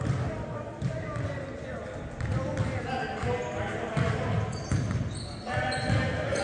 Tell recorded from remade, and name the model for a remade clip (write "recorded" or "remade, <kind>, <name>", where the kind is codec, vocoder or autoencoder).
recorded